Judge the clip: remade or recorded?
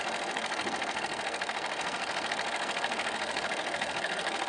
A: remade